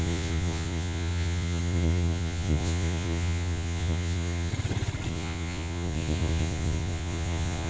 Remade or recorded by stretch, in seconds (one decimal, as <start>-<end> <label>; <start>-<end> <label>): 0.0-4.5 remade; 4.5-5.1 recorded; 5.1-7.7 remade